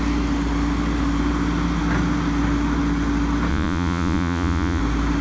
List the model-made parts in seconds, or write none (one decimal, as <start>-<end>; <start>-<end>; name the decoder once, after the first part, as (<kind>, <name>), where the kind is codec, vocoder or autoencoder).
3.5-4.8 (vocoder, Vocos)